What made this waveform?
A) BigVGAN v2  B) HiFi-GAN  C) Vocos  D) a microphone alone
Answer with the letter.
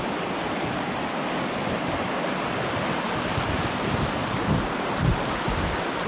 D